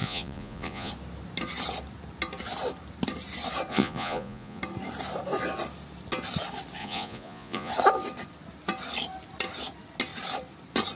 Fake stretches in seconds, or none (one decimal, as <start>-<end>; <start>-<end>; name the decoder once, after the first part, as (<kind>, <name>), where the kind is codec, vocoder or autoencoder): 0.0-0.9 (vocoder, Vocos); 3.7-4.6; 6.8-7.7